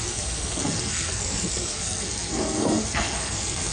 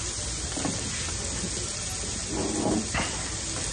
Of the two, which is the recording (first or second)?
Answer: second